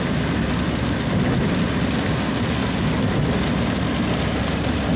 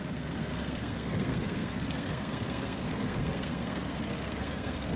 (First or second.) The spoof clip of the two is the second